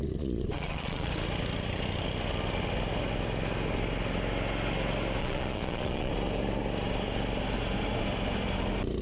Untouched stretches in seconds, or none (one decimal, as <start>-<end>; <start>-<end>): 1.1-5.2; 6.1-9.0